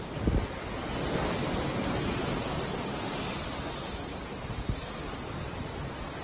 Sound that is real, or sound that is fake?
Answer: real